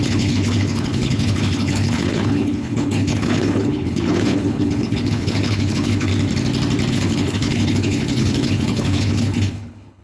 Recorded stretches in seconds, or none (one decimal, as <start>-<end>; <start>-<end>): 6.1-6.9